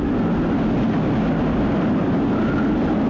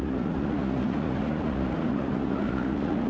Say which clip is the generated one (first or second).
second